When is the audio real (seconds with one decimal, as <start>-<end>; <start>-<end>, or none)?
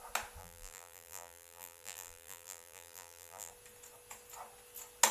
0.0-0.4; 3.5-5.1